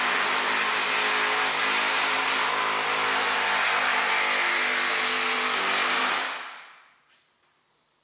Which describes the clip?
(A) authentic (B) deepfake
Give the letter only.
A